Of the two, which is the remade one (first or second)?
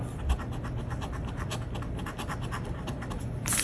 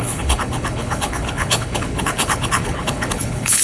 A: second